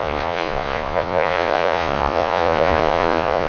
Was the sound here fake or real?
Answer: fake